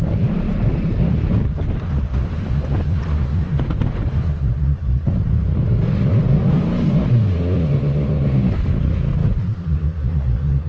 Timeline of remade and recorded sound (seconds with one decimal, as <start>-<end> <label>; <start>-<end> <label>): 0.0-10.7 recorded